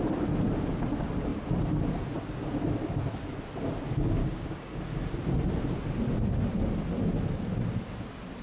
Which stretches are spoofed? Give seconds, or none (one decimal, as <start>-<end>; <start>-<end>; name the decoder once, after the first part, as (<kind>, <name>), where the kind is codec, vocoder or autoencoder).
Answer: 4.2-4.8 (codec, DAC)